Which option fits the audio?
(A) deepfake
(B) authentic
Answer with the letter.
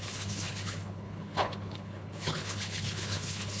A